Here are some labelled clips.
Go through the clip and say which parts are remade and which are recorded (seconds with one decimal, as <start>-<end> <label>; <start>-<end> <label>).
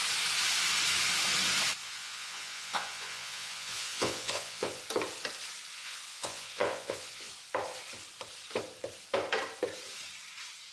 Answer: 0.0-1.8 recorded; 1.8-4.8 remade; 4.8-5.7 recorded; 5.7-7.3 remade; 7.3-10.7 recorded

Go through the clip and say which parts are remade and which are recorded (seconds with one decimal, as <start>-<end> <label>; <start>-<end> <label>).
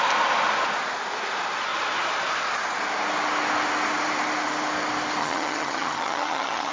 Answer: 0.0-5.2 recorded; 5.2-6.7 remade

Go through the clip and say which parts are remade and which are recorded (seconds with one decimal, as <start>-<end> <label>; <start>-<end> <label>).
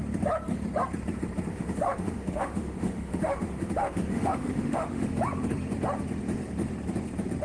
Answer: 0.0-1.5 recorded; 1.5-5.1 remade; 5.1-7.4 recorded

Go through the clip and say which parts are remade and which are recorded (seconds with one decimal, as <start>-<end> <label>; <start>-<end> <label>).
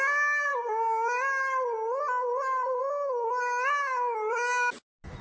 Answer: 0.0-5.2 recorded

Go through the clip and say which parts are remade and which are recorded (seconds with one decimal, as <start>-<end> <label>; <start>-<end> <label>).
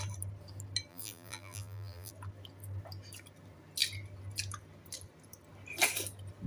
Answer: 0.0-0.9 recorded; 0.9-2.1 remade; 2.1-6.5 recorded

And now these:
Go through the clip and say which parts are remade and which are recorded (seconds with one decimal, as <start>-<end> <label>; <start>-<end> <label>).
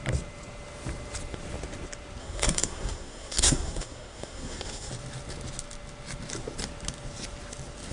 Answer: 0.0-2.2 recorded; 2.2-4.9 remade; 4.9-7.9 recorded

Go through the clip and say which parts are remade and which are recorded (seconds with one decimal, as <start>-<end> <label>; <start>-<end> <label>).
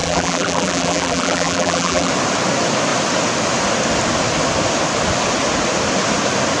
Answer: 0.0-2.1 remade; 2.1-6.6 recorded